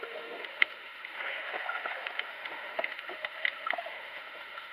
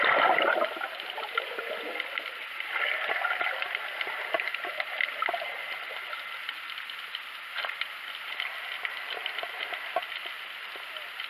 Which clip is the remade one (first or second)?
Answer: first